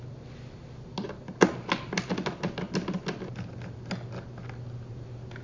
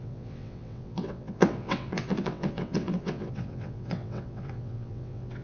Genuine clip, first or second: first